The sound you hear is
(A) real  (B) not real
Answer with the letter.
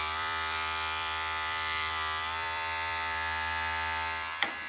B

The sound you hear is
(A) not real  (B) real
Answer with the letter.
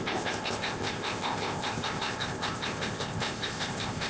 A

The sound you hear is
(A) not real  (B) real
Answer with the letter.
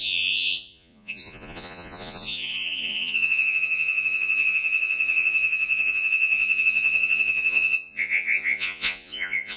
A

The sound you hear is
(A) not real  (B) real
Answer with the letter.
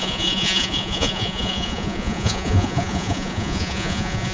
A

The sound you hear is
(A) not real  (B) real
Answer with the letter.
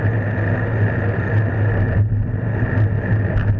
B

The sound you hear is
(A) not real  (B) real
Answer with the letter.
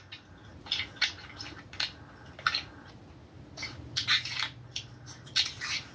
B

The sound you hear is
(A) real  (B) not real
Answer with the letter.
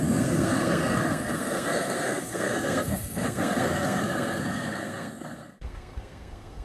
B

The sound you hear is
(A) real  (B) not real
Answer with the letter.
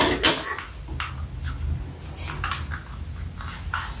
A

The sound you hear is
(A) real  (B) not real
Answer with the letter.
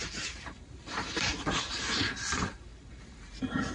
B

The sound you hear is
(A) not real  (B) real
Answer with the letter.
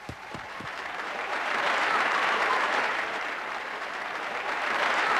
A